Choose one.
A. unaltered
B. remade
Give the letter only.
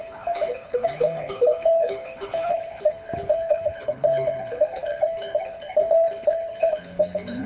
B